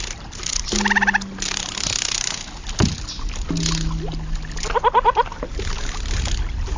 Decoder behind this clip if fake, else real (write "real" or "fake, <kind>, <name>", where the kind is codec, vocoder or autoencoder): real